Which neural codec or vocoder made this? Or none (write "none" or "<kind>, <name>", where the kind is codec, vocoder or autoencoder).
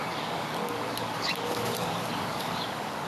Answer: codec, DAC